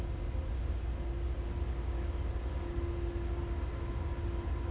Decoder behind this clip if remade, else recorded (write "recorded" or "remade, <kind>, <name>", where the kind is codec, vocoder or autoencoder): recorded